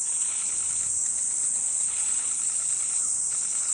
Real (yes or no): no